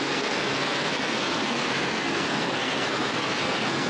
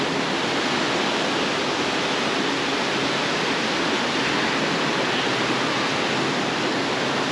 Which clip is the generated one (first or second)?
first